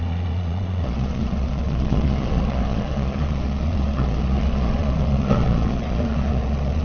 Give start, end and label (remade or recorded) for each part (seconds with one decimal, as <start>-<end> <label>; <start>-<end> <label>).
0.0-6.8 remade